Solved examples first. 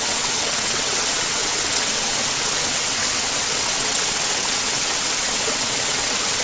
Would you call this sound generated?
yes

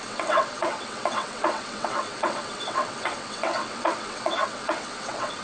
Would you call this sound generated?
yes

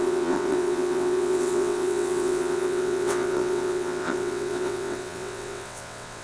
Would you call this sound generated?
yes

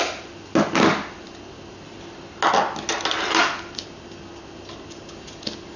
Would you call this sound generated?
no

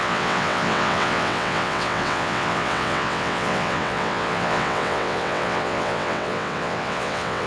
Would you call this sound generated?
yes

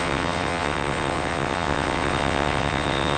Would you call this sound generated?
yes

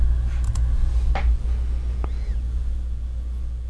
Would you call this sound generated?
no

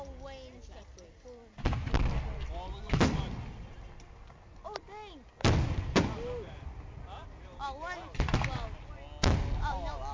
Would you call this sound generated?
no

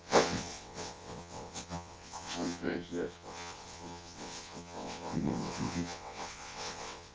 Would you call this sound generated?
yes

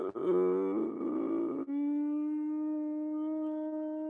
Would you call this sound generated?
no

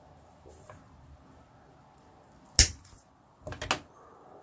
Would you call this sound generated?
no